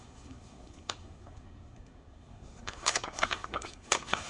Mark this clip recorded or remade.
remade